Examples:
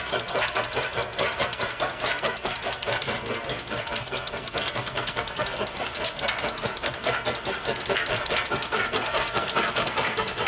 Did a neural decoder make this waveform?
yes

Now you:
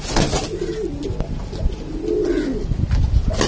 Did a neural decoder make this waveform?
no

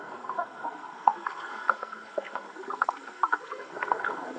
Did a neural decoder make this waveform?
yes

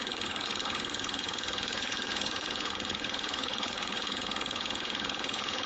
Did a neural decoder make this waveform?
yes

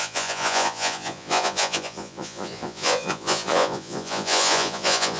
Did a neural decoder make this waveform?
yes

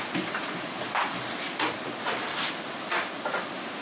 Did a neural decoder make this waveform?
no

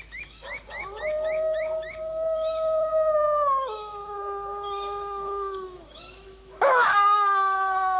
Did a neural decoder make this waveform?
yes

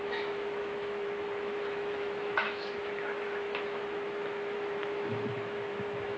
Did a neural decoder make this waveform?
yes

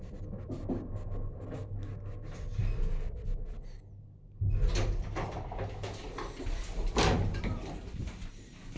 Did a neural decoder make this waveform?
no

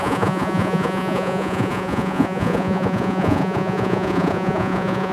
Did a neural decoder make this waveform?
yes